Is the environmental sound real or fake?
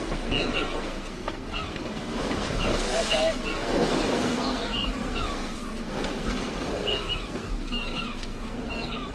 fake